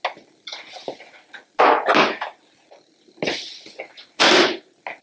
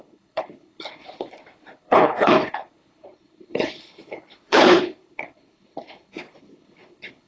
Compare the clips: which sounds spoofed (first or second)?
second